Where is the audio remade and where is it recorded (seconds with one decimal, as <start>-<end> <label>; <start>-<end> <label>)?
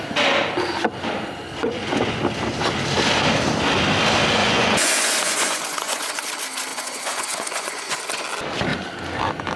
0.0-1.6 recorded; 1.6-2.2 remade; 2.2-4.4 recorded; 4.4-6.2 remade; 6.2-6.7 recorded; 6.7-8.0 remade; 8.0-9.6 recorded